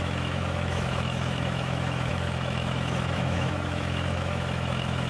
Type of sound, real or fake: fake